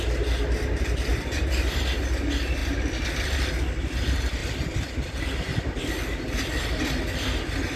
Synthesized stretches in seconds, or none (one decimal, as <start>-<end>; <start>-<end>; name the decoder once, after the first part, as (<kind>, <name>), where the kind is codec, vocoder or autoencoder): 1.1-1.8 (vocoder, BigVGAN v2); 2.6-3.5